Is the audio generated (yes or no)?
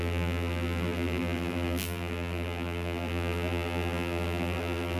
yes